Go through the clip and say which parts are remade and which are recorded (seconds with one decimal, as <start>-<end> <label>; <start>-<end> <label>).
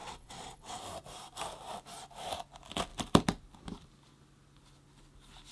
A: 0.0-0.8 remade; 0.8-5.5 recorded